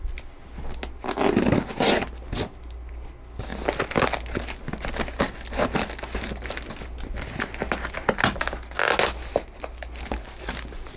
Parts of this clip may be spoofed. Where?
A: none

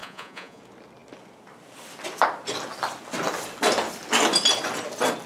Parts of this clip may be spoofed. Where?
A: 0.0-0.6 (vocoder, Vocos)

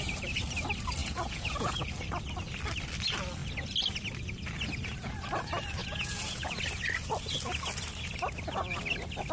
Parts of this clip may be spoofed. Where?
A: 1.0-1.9 (vocoder, Vocos); 5.8-6.6

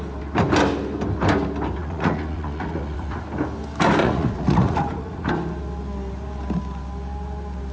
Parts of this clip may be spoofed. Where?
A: 1.8-3.3 (vocoder, Vocos); 4.0-5.3

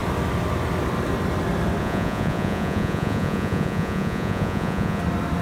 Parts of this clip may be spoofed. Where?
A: 1.8-5.0 (vocoder, Vocos)